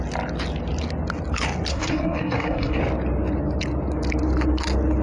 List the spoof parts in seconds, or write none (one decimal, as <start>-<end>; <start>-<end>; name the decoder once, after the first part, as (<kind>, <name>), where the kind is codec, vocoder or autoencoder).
1.7-2.8 (codec, SNAC)